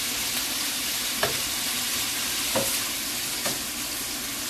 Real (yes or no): yes